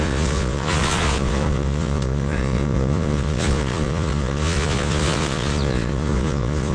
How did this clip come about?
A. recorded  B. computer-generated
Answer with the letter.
B